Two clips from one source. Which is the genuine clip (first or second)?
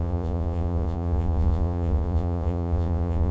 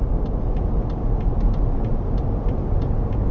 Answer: second